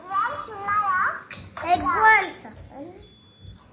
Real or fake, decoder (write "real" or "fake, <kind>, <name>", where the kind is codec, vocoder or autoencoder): real